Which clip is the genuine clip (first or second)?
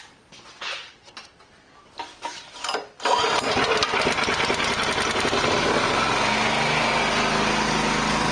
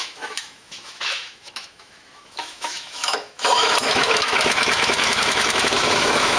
first